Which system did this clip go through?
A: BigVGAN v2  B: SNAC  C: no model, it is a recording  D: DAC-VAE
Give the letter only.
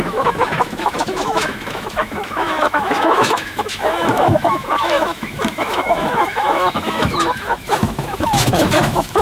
D